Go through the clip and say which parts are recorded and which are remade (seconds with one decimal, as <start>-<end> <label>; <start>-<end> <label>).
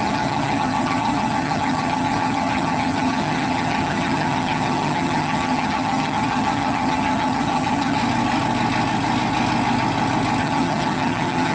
0.0-8.0 remade; 8.0-10.4 recorded; 10.4-11.5 remade